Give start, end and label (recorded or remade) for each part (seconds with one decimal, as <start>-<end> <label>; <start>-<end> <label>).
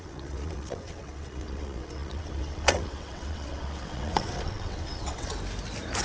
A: 0.0-5.3 remade; 5.3-6.0 recorded